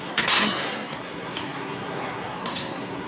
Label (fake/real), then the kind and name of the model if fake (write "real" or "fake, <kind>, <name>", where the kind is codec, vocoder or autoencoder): fake, codec, SNAC